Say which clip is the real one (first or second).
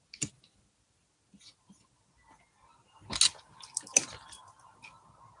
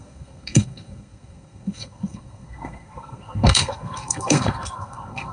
first